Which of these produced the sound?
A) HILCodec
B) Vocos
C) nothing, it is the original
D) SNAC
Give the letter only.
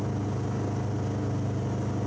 C